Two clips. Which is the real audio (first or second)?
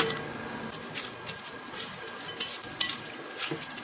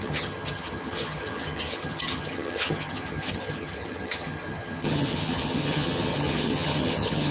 first